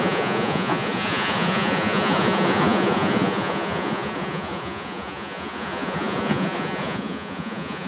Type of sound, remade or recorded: remade